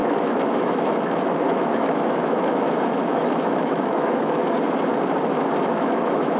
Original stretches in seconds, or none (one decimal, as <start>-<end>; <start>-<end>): 4.4-5.7